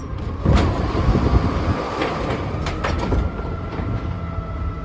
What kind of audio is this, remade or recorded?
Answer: recorded